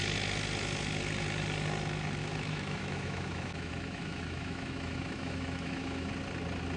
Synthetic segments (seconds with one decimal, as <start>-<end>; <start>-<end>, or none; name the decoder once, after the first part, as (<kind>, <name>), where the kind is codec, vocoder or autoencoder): 2.2-6.1 (autoencoder, DAC-VAE)